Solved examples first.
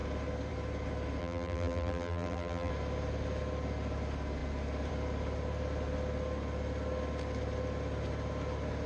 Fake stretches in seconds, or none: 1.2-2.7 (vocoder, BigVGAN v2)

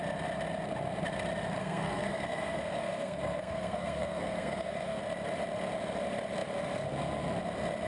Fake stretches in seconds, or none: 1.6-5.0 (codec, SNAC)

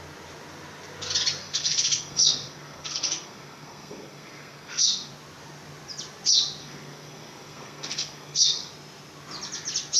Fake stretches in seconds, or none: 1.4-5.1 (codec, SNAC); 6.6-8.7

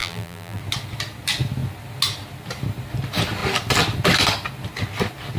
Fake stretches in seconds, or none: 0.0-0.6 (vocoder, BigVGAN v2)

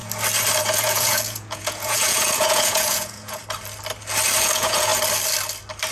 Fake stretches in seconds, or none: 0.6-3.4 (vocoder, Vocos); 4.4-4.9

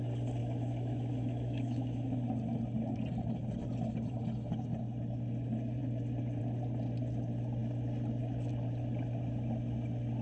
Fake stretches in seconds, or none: 0.4-2.2 (autoencoder, DAC-VAE)

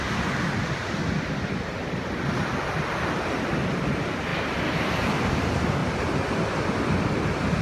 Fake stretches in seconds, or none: 4.3-4.9 (vocoder, BigVGAN v2); 5.8-6.6

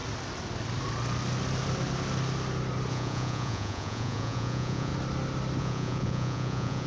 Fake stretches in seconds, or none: 2.9-4.9 (vocoder, Vocos); 5.6-6.9